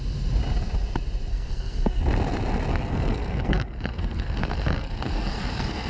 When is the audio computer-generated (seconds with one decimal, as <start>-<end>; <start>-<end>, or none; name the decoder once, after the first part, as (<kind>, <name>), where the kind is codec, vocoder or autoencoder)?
1.3-2.0 (codec, SNAC); 2.7-5.9